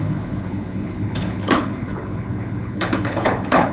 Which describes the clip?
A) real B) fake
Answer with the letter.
B